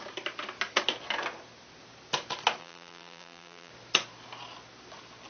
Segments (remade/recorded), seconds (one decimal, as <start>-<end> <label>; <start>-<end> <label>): 0.0-2.6 recorded; 2.6-3.7 remade; 3.7-5.3 recorded